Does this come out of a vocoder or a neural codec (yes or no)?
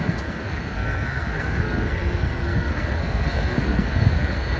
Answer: yes